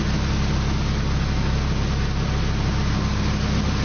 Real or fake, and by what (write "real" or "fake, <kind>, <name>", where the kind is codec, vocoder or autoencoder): real